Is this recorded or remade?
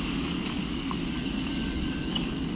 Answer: remade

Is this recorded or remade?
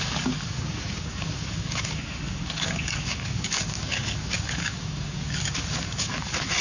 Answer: remade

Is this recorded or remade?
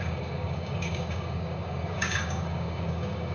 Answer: remade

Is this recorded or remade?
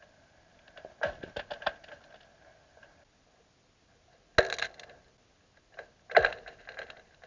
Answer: recorded